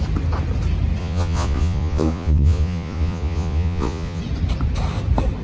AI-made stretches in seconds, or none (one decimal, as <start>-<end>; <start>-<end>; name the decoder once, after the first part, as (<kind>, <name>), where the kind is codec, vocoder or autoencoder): 1.0-4.2 (vocoder, Vocos)

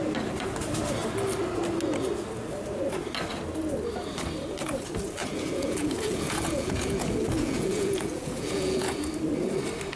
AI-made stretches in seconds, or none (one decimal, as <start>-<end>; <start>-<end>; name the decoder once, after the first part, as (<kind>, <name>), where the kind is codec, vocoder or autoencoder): 5.2-9.0 (vocoder, Vocos)